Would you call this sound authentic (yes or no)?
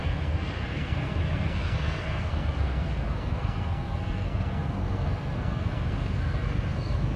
no